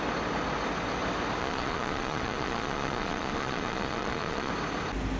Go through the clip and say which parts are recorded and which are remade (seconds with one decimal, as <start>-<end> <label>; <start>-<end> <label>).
0.0-1.4 recorded; 1.4-4.5 remade; 4.5-5.2 recorded